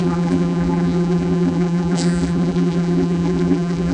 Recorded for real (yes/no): no